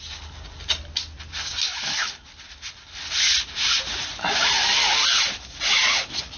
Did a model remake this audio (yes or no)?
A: no